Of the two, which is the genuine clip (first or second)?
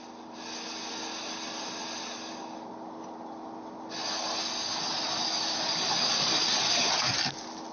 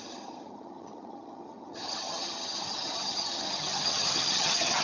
first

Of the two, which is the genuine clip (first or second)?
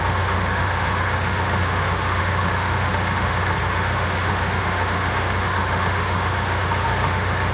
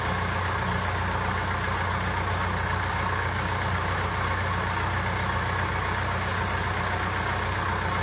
second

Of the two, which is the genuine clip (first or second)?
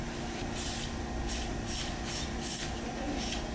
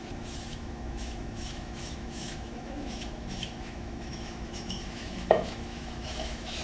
first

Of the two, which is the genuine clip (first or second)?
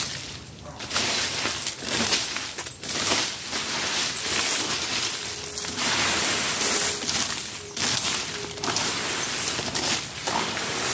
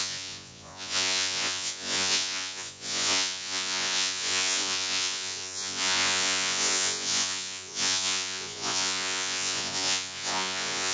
first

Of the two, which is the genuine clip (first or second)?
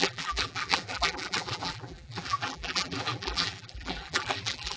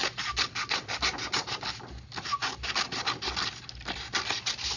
second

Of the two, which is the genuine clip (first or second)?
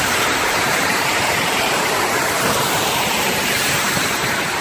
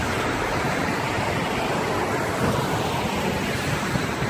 second